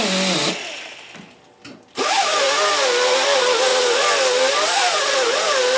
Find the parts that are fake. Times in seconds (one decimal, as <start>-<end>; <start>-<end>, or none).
none